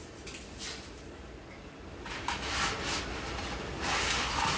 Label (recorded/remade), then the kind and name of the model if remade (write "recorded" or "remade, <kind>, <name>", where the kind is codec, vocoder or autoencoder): recorded